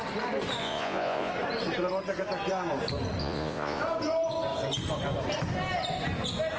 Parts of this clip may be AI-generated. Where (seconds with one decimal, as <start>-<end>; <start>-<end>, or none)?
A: 0.6-1.3; 3.2-3.8